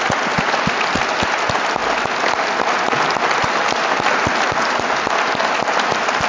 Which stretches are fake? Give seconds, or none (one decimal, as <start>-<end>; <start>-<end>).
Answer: none